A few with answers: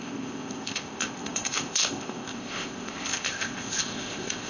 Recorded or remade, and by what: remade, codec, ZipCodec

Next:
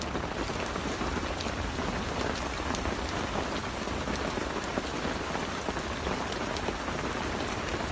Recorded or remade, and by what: recorded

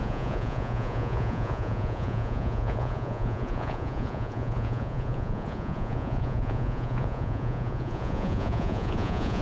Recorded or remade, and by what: remade, vocoder, Vocos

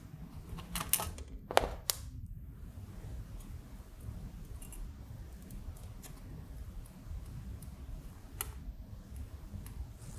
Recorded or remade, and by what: recorded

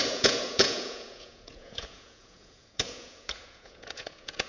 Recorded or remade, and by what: remade, vocoder, Vocos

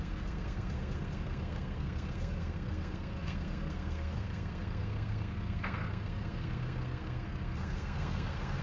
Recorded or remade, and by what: remade, codec, SNAC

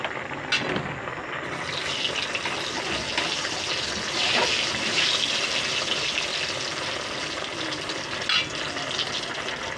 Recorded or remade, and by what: recorded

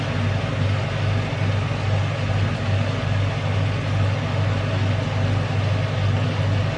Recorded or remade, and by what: recorded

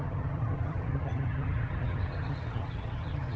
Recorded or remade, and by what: remade, vocoder, HiFi-GAN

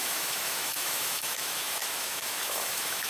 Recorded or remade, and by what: remade, autoencoder, DAC-VAE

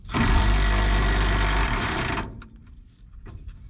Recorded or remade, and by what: remade, vocoder, BigVGAN v2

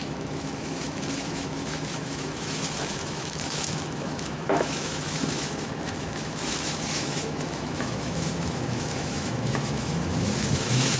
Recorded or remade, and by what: remade, autoencoder, DAC-VAE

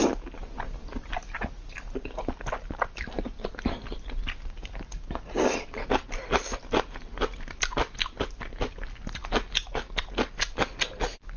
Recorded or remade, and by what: recorded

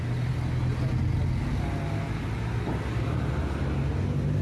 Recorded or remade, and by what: recorded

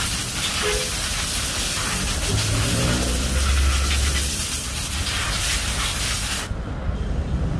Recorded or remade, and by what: recorded